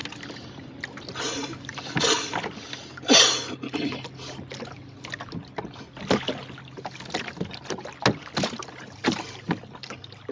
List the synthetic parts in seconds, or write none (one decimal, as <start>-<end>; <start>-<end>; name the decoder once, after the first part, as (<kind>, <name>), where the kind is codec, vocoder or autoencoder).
none